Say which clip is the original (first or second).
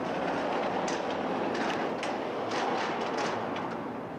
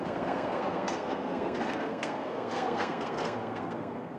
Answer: first